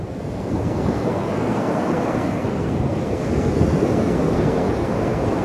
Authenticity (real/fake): fake